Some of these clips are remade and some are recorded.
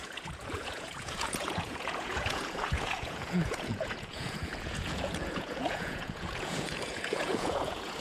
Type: remade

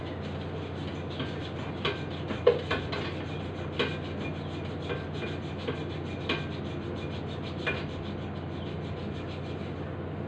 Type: recorded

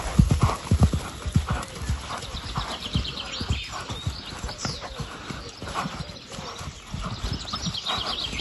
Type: recorded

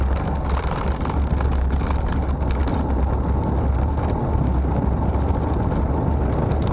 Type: recorded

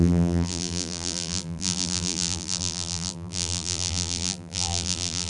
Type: remade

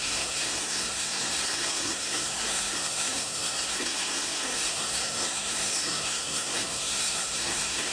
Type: remade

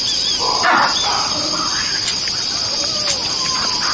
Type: recorded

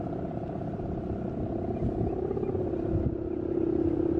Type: recorded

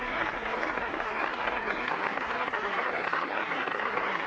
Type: remade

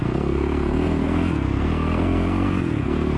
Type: remade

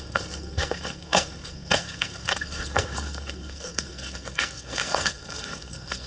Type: remade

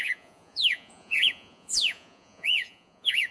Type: remade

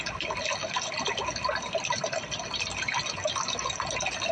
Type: recorded